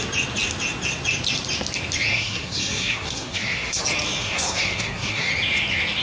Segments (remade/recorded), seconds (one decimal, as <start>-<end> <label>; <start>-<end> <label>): 0.0-2.1 recorded; 2.1-3.8 remade; 3.8-4.2 recorded; 4.2-5.3 remade; 5.3-6.0 recorded